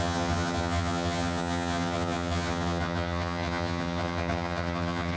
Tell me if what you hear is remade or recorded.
remade